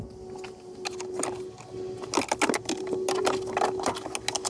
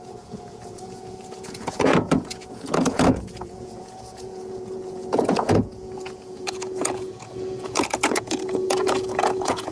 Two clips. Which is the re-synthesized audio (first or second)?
second